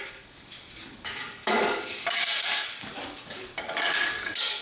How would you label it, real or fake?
fake